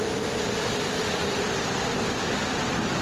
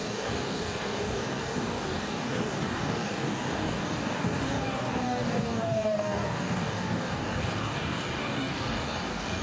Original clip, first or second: first